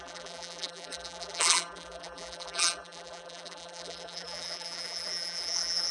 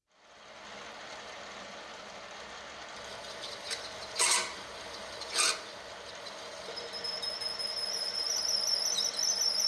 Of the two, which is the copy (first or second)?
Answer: first